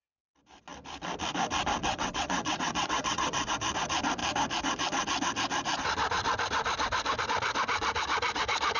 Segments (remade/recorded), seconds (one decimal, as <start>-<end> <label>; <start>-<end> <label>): 0.0-1.8 recorded; 1.8-3.5 remade; 3.5-8.8 recorded